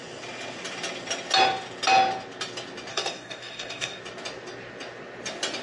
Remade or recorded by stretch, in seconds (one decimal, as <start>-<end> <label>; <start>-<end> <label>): 0.0-2.9 recorded; 2.9-4.0 remade; 4.0-5.6 recorded